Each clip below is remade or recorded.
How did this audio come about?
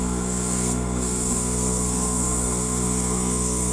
remade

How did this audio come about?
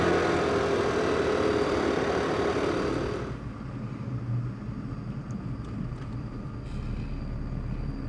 recorded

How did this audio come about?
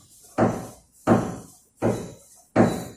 recorded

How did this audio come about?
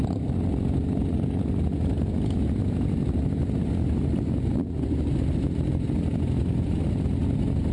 recorded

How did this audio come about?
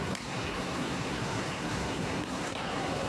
remade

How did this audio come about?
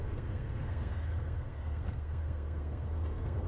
remade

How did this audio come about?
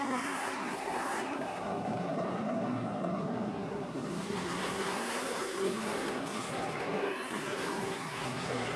remade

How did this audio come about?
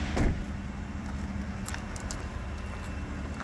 recorded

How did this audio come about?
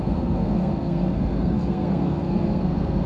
remade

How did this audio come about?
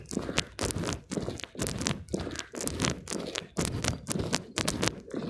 recorded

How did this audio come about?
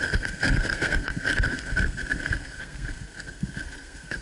remade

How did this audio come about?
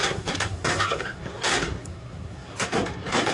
remade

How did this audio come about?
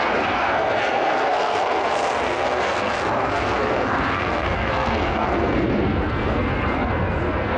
remade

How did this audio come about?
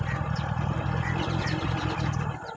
recorded